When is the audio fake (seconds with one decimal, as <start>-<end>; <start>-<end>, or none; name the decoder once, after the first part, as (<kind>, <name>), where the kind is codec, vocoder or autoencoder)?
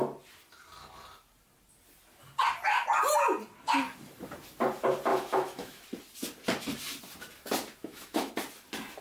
5.1-5.8 (autoencoder, DAC-VAE); 7.8-8.3